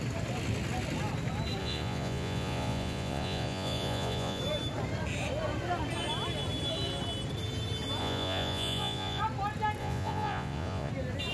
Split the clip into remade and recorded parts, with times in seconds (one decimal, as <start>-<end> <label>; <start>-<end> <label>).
0.0-1.6 recorded; 1.6-4.4 remade; 4.4-8.0 recorded; 8.0-9.2 remade; 9.2-9.8 recorded; 9.8-10.9 remade; 10.9-11.3 recorded